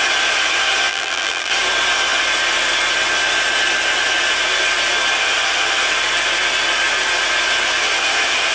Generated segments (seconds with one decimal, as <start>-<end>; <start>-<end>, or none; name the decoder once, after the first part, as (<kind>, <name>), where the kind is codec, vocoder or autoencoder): 0.9-1.5 (vocoder, BigVGAN v2)